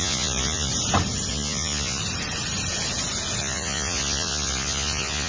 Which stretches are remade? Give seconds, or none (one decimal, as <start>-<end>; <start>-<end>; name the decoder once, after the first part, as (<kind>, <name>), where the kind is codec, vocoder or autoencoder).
0.0-0.7 (vocoder, Vocos); 1.3-2.0; 3.4-5.3